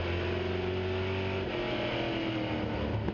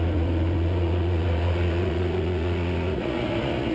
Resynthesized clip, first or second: second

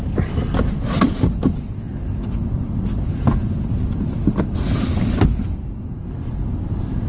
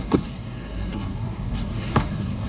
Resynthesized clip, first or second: second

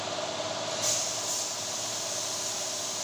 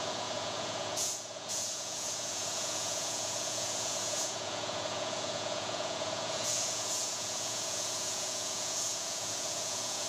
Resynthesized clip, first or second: second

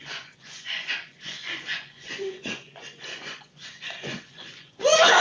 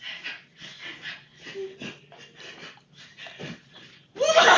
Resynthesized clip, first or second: first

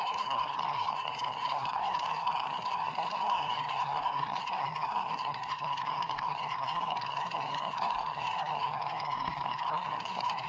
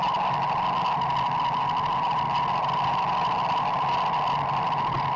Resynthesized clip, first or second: first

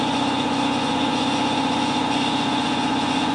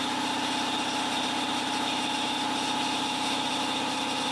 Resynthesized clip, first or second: first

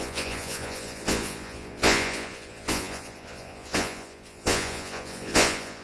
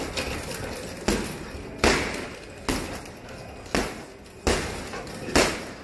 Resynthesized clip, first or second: first